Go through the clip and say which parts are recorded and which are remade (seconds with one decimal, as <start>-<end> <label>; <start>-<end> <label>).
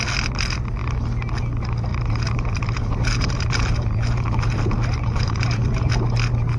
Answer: 0.0-1.9 recorded; 1.9-5.9 remade; 5.9-6.6 recorded